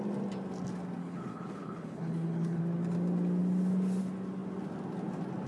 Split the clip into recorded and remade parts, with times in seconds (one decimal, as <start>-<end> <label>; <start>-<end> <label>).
0.0-1.0 recorded; 1.0-2.6 remade; 2.6-5.5 recorded